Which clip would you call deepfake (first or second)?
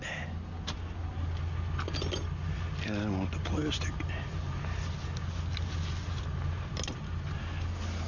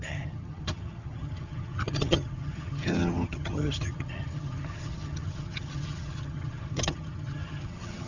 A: second